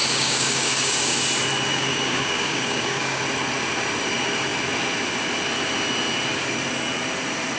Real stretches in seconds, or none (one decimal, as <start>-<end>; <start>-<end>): 1.2-1.7; 3.2-7.6